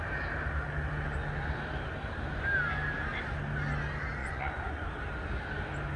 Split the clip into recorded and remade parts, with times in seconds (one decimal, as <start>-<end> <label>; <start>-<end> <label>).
0.0-4.2 recorded; 4.2-4.9 remade; 4.9-6.0 recorded